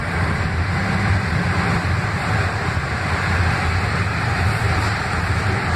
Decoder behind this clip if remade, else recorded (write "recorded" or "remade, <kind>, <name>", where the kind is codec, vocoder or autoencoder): recorded